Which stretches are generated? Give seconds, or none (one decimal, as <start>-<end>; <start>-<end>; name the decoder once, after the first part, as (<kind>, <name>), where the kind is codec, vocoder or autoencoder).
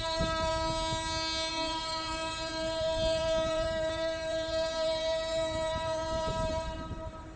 0.0-0.5 (vocoder, BigVGAN v2); 1.5-7.4